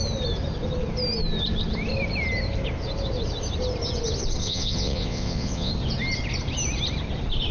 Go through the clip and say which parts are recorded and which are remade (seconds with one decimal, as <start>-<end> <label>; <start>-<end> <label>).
0.0-4.4 recorded; 4.4-5.7 remade; 5.7-7.5 recorded